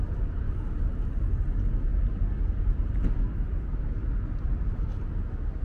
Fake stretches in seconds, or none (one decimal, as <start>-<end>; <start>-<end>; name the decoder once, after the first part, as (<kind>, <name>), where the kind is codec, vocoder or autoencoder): none